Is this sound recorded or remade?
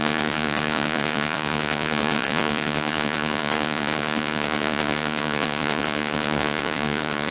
remade